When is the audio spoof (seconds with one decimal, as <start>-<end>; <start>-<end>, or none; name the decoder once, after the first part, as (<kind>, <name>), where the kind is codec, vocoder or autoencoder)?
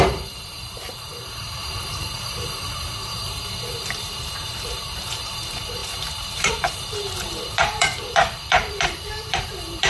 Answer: 0.0-9.9 (vocoder, BigVGAN v2)